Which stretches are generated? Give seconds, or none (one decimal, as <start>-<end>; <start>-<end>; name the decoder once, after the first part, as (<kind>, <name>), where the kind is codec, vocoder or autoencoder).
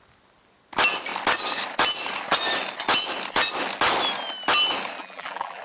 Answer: 5.0-5.6 (vocoder, BigVGAN v2)